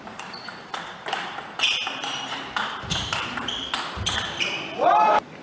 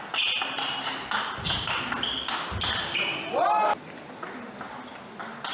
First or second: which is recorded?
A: second